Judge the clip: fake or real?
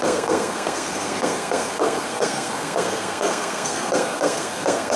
fake